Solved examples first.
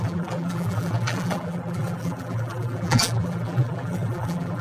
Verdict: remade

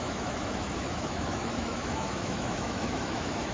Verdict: remade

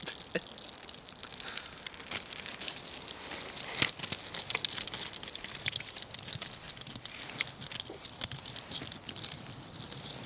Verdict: recorded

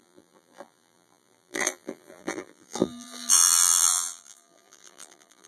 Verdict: remade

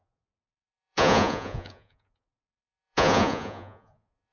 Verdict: remade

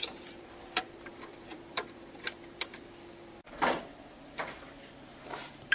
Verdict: remade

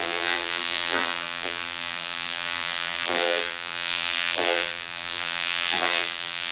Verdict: remade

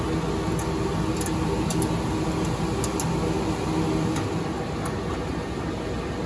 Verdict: recorded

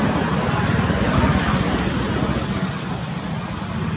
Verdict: recorded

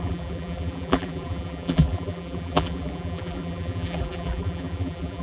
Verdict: remade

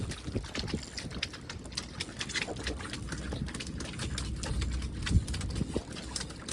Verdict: recorded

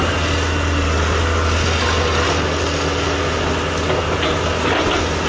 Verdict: recorded